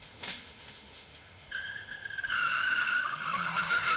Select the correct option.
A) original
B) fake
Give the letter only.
B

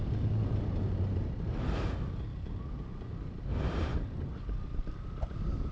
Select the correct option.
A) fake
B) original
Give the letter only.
B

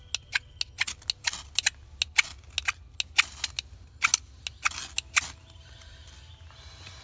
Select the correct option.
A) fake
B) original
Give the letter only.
B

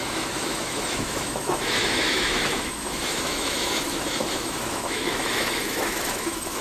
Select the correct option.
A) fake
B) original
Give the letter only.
A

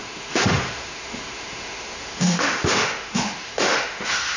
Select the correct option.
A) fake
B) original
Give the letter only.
A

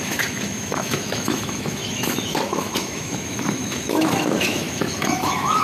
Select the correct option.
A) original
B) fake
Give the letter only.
B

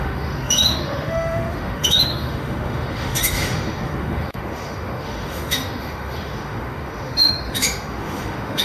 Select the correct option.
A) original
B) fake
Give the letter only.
B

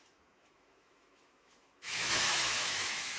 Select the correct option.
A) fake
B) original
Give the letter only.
A